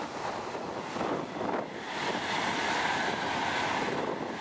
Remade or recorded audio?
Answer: recorded